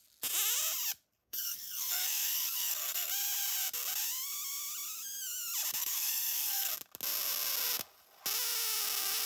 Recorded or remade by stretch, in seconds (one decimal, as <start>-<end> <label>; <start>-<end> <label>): 0.0-1.2 recorded; 1.2-3.1 remade; 3.1-5.8 recorded; 5.8-6.7 remade; 6.7-9.3 recorded